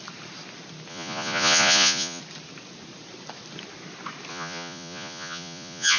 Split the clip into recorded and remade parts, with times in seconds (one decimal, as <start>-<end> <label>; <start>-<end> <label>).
0.0-0.9 recorded; 0.9-2.2 remade; 2.2-4.3 recorded; 4.3-6.0 remade